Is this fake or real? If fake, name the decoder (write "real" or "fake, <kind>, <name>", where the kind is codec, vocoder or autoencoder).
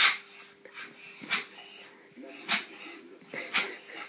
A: real